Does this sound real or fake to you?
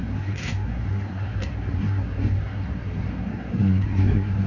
fake